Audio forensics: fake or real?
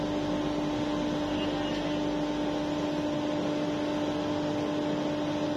real